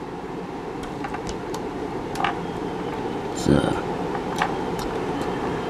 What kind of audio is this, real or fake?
fake